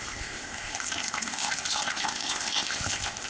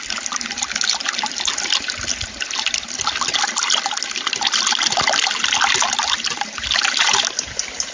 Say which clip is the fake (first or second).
first